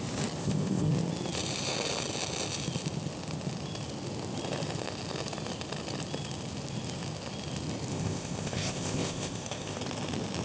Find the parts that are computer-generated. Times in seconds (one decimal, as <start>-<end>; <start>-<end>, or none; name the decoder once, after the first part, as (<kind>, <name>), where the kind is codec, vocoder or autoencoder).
0.4-0.9 (codec, ZipCodec); 7.9-9.8